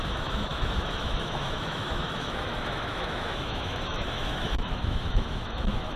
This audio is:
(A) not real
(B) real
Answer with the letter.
A